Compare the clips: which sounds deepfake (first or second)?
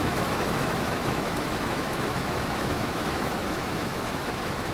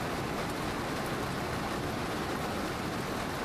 first